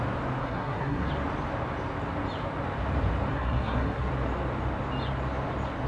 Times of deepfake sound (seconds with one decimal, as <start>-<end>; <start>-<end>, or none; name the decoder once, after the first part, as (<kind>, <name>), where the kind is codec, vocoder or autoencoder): 0.4-1.1 (codec, SNAC); 3.3-4.1